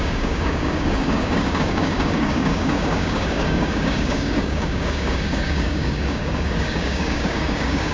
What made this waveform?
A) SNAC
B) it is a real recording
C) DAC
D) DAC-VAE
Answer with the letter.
C